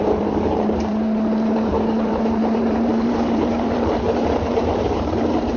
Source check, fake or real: fake